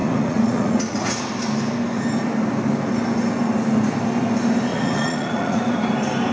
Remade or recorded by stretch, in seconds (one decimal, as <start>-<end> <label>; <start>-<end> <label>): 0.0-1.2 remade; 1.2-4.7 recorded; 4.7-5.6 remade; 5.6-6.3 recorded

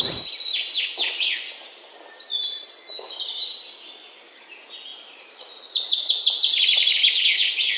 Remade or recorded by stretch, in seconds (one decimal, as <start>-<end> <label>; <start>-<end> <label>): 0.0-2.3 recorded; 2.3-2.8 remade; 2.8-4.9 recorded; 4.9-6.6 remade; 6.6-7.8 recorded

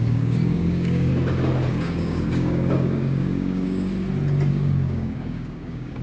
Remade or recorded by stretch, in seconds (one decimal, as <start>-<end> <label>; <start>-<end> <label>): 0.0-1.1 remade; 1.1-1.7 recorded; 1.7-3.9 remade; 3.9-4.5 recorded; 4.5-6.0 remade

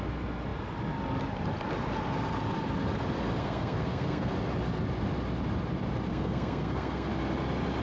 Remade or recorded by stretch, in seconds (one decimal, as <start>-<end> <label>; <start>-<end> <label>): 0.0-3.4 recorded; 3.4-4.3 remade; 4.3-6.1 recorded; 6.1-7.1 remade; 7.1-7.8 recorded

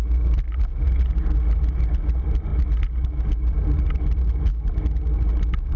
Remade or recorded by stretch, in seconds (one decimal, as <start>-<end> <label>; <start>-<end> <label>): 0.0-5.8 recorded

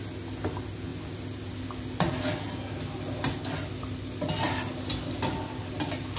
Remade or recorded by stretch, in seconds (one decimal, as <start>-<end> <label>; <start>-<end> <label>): 0.0-6.2 recorded